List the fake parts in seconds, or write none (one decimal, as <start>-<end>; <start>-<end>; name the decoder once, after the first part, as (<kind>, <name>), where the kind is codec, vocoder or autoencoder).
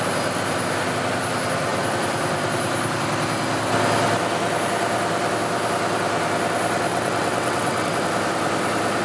6.9-8.0 (vocoder, WaveNeXt)